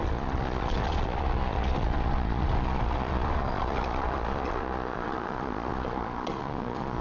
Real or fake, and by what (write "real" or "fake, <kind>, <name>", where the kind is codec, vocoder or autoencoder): fake, vocoder, Vocos